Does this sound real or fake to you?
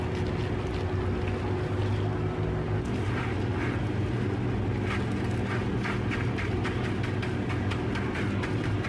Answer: real